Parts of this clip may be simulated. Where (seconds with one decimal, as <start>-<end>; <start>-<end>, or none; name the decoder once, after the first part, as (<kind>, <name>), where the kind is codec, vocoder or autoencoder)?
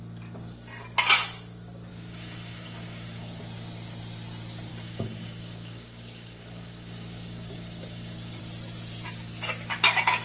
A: 1.9-3.4 (codec, DAC); 4.7-8.4